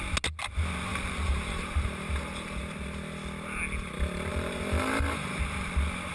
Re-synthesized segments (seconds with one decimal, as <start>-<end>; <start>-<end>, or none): 0.9-2.6; 4.3-5.4